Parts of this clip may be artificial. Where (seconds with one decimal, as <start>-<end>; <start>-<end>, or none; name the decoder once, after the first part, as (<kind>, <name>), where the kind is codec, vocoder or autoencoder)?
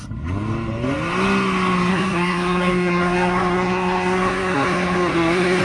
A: 1.9-5.6 (codec, SNAC)